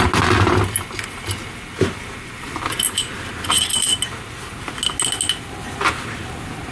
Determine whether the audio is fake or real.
real